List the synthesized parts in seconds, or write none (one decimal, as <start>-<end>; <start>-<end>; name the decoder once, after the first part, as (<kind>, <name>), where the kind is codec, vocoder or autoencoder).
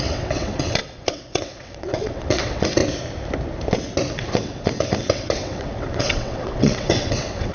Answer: 0.0-2.8 (vocoder, WaveNeXt); 4.1-7.5